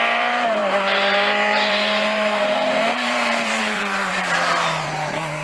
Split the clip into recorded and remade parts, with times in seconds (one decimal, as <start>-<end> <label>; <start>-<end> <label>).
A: 0.0-5.4 remade